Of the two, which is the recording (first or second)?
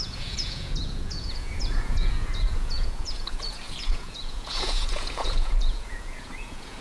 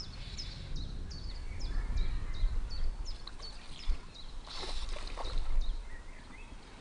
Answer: second